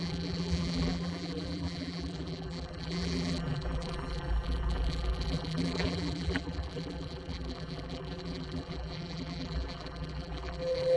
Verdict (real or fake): fake